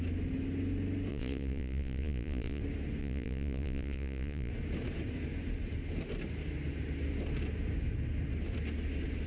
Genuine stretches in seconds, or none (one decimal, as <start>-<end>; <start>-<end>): 0.0-1.1; 2.6-3.0; 4.5-9.3